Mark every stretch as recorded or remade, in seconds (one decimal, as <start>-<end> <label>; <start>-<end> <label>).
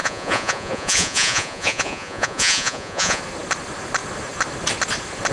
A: 0.0-3.2 remade; 3.2-5.3 recorded